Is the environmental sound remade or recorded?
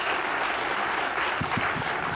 recorded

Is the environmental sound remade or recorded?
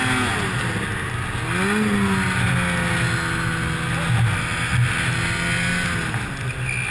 recorded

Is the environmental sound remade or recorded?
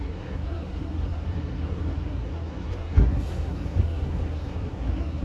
remade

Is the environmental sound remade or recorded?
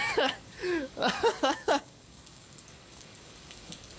remade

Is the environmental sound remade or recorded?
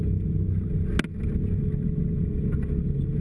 recorded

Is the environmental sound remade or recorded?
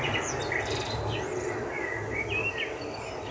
recorded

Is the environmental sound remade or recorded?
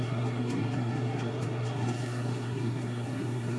remade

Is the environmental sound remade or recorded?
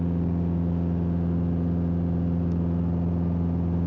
recorded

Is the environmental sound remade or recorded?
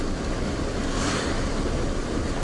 recorded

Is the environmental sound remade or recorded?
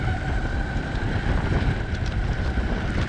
recorded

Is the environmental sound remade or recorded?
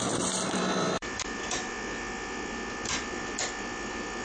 remade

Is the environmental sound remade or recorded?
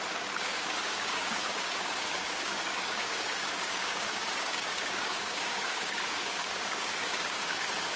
remade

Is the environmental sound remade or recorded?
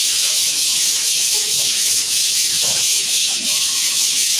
remade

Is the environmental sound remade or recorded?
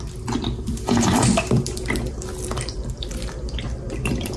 remade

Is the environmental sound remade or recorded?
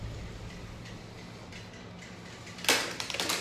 recorded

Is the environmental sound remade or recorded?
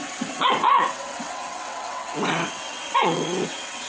remade